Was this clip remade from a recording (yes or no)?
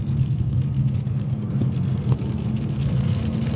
yes